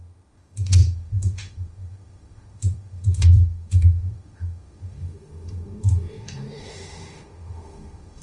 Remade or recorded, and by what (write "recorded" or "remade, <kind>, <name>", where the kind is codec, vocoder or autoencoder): remade, autoencoder, DAC-VAE